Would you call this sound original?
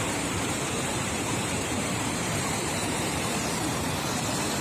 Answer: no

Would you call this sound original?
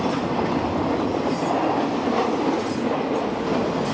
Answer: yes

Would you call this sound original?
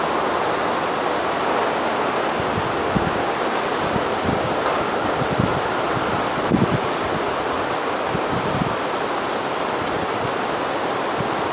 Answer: yes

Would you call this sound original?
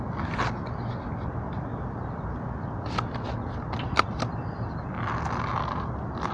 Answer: yes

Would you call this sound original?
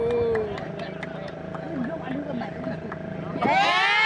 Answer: yes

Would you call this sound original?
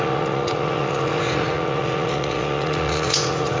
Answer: no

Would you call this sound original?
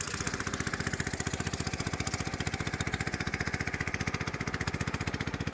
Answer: yes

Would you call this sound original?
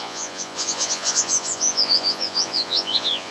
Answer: no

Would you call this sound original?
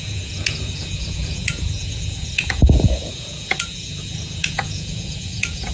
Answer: no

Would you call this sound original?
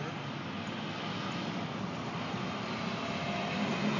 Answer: yes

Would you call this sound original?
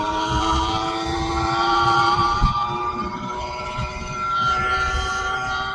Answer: no